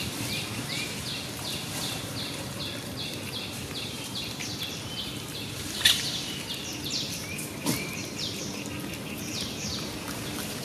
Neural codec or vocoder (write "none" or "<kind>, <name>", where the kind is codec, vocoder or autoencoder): vocoder, BigVGAN v2